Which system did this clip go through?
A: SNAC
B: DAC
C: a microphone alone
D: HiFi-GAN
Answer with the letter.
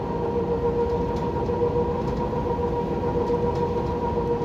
C